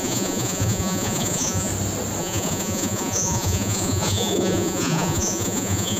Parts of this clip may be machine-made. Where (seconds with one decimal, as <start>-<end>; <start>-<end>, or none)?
0.0-1.7; 2.2-6.0